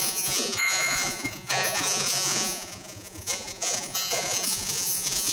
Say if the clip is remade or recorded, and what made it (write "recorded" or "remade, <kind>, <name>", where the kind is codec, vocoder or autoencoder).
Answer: remade, vocoder, Vocos